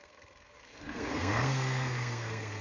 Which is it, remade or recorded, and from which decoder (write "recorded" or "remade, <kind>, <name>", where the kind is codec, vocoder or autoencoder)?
remade, codec, SNAC